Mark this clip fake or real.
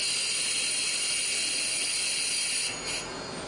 real